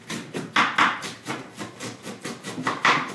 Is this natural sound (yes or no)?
yes